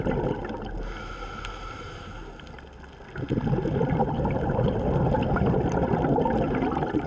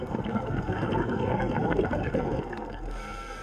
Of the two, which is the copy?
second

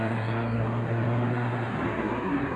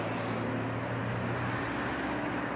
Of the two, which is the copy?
first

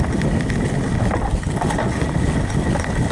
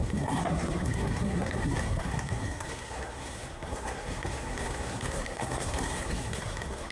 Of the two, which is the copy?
second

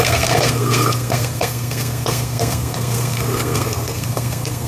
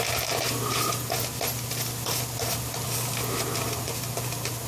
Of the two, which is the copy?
first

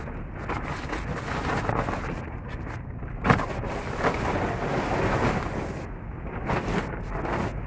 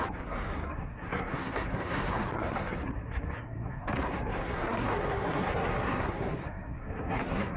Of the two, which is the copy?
second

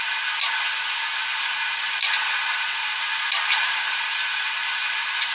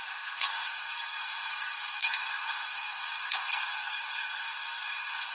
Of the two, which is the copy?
second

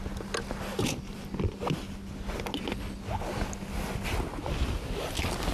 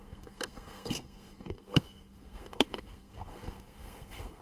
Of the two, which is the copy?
second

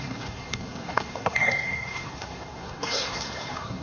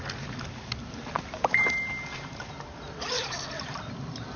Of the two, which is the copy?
first